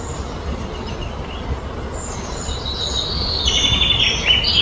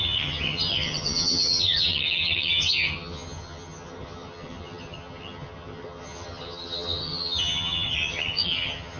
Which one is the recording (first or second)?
first